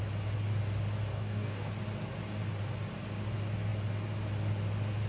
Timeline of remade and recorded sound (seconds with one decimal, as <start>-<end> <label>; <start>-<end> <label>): 0.0-1.1 recorded; 1.1-1.7 remade; 1.7-5.1 recorded